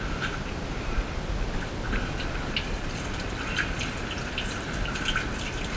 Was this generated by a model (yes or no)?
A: no